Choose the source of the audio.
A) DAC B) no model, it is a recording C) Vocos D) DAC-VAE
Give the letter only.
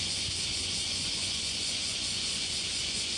C